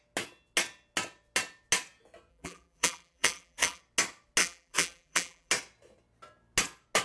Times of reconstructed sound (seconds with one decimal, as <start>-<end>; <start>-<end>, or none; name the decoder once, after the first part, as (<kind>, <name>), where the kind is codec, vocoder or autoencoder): 2.3-3.8 (vocoder, BigVGAN v2); 4.4-5.5